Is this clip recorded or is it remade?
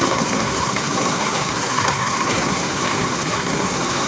remade